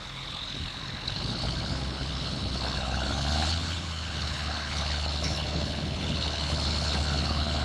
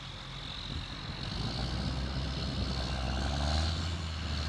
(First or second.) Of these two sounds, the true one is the second